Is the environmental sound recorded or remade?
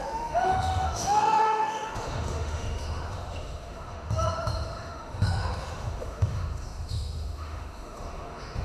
remade